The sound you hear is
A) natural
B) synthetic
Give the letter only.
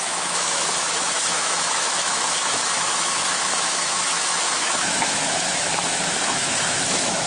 B